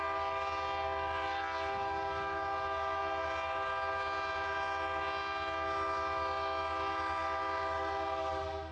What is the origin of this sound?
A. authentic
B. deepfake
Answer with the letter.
A